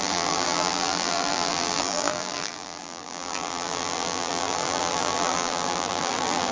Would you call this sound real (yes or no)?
no